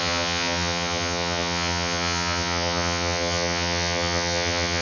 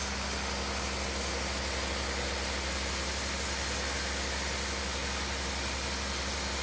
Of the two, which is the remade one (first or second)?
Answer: first